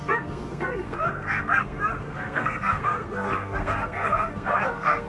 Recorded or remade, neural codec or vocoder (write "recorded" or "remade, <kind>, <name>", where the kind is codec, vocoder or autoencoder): remade, codec, SNAC